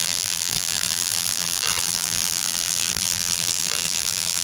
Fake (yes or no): yes